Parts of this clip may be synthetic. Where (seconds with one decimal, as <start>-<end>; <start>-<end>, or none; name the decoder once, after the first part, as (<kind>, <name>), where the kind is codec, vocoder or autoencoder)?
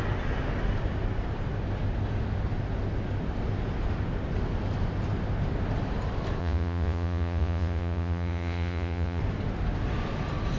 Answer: 6.4-9.2 (vocoder, Vocos)